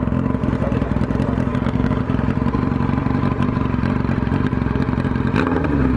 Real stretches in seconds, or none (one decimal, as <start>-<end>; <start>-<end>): 0.0-1.5; 2.0-6.0